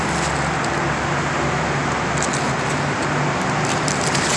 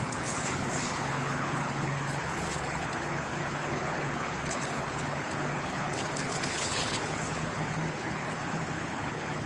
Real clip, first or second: first